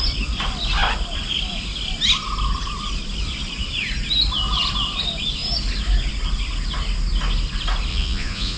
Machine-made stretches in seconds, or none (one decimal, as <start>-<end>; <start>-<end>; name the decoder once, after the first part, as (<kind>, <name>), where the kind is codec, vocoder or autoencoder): 7.9-8.6 (vocoder, Vocos)